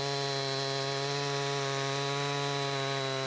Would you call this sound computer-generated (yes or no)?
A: no